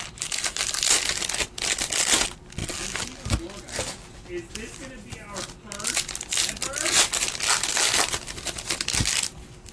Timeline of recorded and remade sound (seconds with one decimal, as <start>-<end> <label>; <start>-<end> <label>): 0.0-9.7 recorded